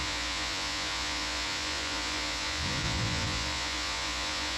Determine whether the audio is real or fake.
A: fake